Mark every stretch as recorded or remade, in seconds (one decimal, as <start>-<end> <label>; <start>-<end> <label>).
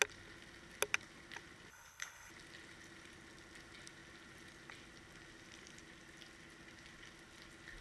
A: 0.0-1.7 recorded; 1.7-2.3 remade; 2.3-7.8 recorded